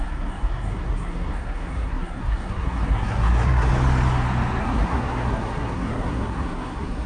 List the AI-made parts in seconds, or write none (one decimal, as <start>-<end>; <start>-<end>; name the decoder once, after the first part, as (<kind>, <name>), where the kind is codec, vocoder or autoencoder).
0.0-3.7 (codec, SNAC); 4.6-7.1